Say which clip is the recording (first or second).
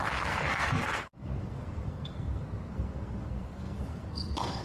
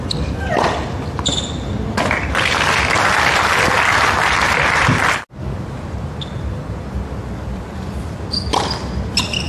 second